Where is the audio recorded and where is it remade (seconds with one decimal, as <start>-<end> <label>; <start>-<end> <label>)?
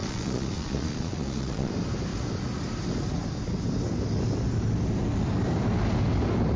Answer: 0.0-1.7 remade; 1.7-6.6 recorded